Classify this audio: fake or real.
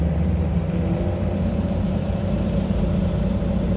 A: fake